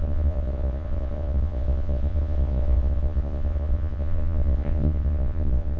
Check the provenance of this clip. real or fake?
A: fake